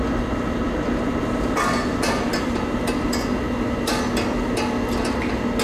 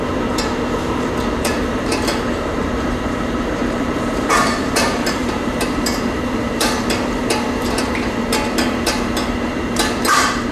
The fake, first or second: second